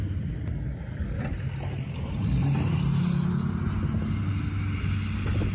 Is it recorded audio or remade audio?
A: recorded